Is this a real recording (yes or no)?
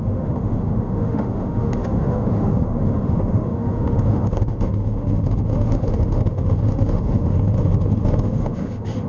no